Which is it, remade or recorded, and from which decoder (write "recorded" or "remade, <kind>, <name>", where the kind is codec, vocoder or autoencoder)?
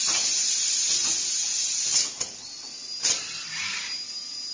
recorded